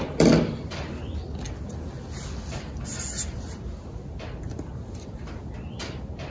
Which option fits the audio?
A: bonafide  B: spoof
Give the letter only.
A